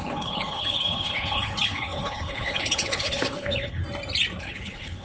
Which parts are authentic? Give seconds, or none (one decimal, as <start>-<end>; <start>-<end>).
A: 3.8-4.4